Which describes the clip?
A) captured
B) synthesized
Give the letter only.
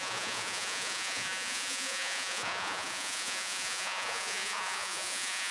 B